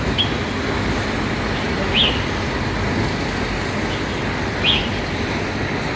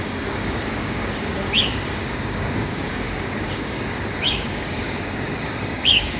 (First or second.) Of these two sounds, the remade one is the second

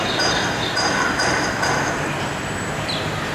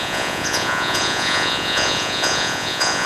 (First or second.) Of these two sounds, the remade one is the second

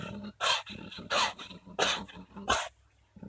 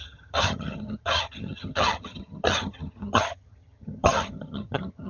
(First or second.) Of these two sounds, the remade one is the second